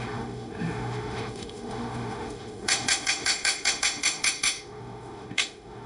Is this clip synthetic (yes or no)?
yes